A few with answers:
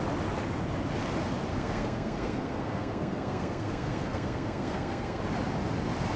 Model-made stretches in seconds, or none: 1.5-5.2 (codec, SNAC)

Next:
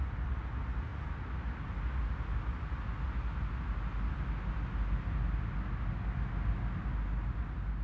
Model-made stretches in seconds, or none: none

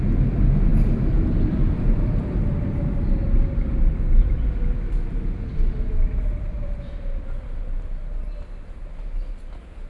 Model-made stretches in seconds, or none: none

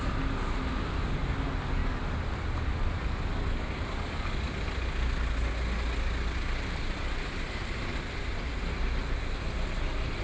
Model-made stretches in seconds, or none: none

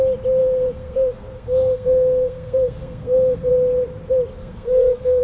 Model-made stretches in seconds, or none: 0.4-3.5 (codec, SNAC); 4.4-5.2

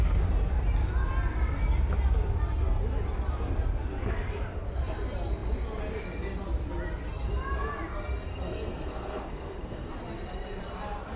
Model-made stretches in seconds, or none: 8.3-9.9 (codec, SNAC)

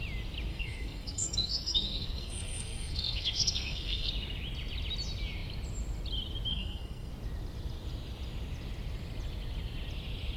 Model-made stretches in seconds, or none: 0.5-4.1 (codec, SNAC); 6.5-7.1

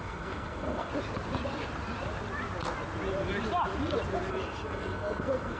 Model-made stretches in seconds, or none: 0.0-0.9 (codec, SNAC); 4.3-5.6